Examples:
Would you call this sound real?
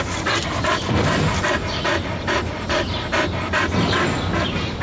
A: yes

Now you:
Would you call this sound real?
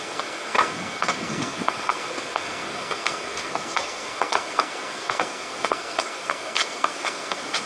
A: no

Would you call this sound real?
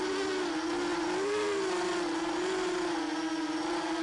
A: yes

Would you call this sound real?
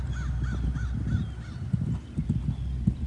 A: yes